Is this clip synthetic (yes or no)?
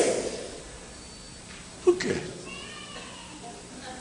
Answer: no